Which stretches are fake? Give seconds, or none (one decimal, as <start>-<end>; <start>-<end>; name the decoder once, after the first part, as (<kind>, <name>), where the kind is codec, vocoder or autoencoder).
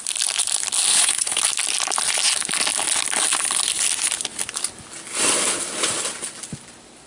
0.9-1.4 (codec, HILCodec)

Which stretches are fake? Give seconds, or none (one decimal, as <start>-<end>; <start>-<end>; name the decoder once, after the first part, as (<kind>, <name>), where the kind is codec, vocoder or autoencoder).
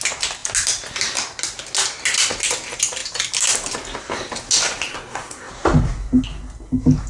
4.9-5.5 (codec, SNAC)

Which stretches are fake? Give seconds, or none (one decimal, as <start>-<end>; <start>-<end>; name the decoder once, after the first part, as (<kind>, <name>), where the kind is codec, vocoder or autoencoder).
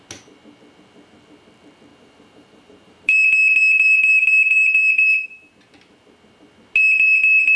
1.9-5.5 (vocoder, BigVGAN v2)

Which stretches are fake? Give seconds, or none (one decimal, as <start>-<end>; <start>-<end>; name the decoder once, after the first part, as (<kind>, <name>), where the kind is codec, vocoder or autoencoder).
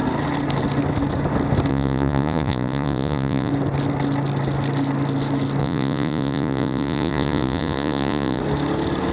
1.7-3.5 (vocoder, Vocos); 5.6-8.4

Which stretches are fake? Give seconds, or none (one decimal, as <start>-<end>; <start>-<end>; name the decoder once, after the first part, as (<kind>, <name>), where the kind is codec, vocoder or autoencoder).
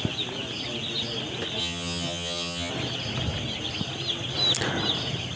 1.6-2.7 (vocoder, HiFi-GAN)